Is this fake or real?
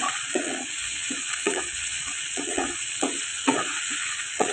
fake